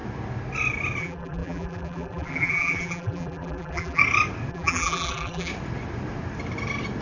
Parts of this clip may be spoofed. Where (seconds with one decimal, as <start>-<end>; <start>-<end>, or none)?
1.0-4.0; 4.5-5.5